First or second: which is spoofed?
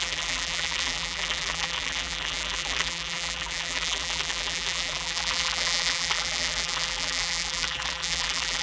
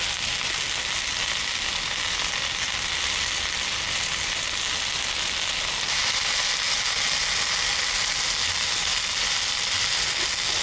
first